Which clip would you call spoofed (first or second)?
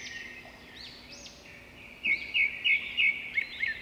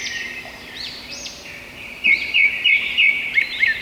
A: second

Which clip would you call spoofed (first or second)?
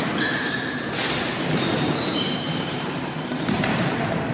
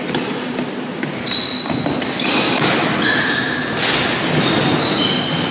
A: first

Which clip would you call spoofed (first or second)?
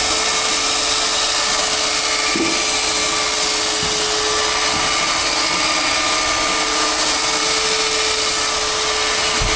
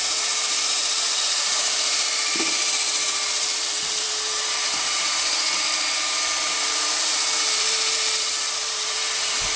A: second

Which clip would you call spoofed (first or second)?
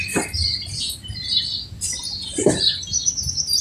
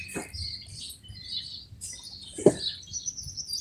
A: first